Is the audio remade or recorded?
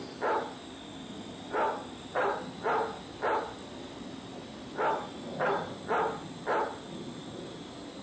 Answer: recorded